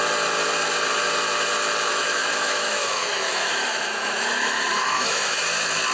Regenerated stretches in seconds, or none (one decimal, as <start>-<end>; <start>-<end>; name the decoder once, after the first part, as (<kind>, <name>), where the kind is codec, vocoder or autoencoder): 1.9-5.4 (autoencoder, DAC-VAE)